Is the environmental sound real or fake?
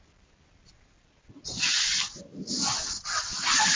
real